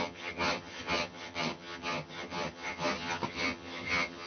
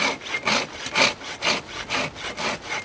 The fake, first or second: first